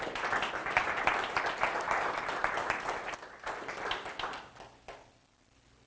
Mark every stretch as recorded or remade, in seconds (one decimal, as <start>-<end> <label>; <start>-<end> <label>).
0.0-0.6 recorded; 0.6-1.4 remade; 1.4-5.9 recorded